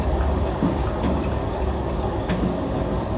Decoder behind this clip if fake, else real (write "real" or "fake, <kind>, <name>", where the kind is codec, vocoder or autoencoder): fake, codec, DAC